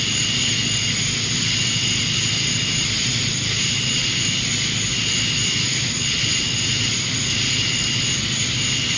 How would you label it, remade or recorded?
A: recorded